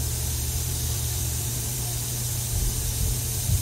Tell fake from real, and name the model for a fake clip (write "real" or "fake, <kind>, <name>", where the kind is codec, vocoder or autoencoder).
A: fake, vocoder, BigVGAN v2